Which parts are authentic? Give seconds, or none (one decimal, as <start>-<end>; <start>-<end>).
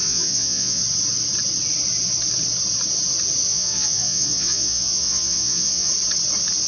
0.8-3.5; 5.9-6.7